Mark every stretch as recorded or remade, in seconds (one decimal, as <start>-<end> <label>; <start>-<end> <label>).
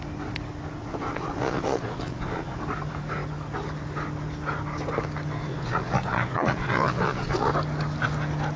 0.0-0.8 recorded; 0.8-2.6 remade; 2.6-5.5 recorded; 5.5-7.5 remade; 7.5-8.6 recorded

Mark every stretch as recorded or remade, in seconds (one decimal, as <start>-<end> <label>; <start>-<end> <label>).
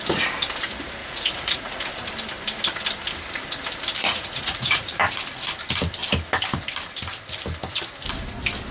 0.0-1.0 recorded; 1.0-2.0 remade; 2.0-4.0 recorded; 4.0-5.0 remade; 5.0-8.7 recorded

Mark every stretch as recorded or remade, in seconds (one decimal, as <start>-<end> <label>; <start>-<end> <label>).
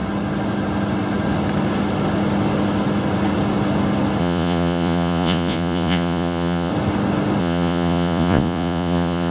0.0-4.2 recorded; 4.2-6.7 remade; 6.7-7.4 recorded; 7.4-9.3 remade